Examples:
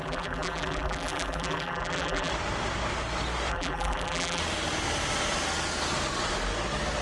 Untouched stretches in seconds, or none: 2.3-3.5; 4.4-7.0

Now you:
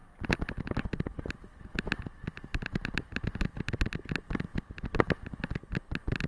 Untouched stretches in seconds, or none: 0.0-2.5; 3.6-4.5; 5.1-6.3

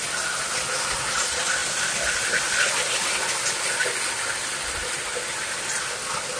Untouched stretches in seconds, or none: 0.0-1.6; 2.6-4.4; 5.8-6.4

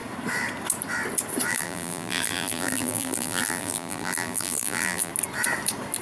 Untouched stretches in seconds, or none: 0.0-1.5; 5.1-6.0

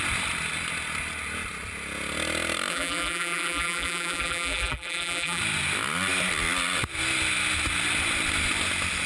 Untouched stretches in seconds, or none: 0.0-2.7; 5.4-9.1